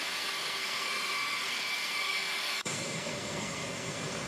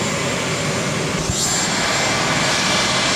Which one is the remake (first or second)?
first